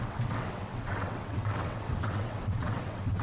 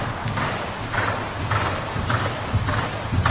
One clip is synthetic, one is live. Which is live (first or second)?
second